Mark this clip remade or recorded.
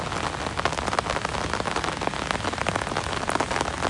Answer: recorded